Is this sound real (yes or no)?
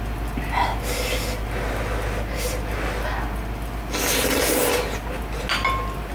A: yes